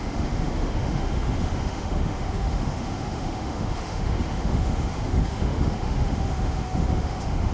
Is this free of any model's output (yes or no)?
no